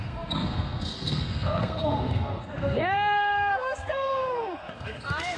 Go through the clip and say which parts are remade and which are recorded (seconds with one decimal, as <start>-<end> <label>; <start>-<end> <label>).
0.0-5.4 remade